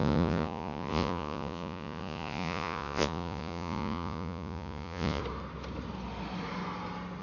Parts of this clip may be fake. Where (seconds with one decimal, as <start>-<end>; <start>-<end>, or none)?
0.0-5.2